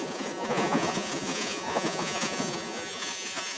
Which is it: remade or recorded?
remade